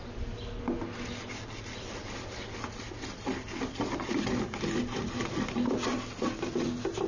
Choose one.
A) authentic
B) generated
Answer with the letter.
A